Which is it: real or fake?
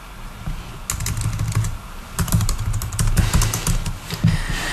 real